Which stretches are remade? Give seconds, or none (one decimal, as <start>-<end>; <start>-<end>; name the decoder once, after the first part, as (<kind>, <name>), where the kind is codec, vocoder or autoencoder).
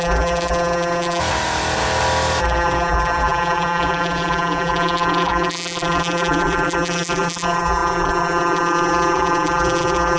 0.0-1.2 (vocoder, BigVGAN v2); 2.4-10.2